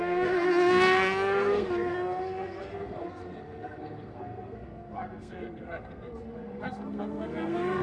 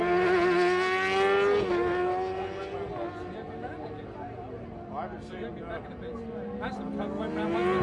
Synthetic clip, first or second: first